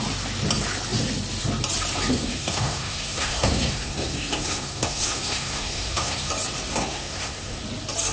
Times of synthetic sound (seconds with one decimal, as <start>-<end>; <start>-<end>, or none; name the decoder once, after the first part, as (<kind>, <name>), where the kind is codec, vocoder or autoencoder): 2.1-6.3 (codec, SNAC); 6.7-7.6